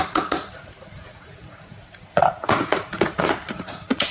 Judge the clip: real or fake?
fake